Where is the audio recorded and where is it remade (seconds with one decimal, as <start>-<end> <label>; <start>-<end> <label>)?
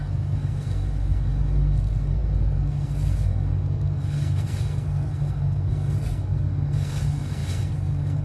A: 0.0-8.2 remade